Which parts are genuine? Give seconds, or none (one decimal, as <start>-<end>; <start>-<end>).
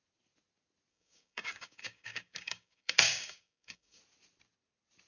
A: 0.0-0.9; 4.0-5.1